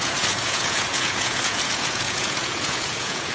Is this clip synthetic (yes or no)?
yes